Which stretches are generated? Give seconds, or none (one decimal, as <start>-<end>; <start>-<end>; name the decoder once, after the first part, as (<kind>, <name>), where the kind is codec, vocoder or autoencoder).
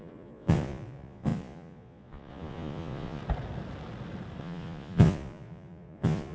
0.0-3.2 (vocoder, Vocos); 4.4-6.3